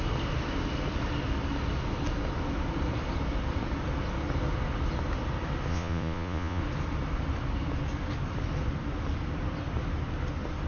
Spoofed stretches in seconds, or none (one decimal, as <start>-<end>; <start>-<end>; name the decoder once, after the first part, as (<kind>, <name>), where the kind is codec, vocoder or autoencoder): 5.7-6.6 (vocoder, Vocos)